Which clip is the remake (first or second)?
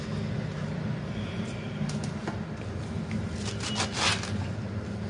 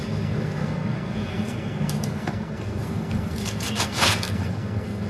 second